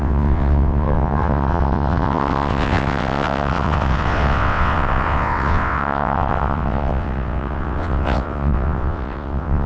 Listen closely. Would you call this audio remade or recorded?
remade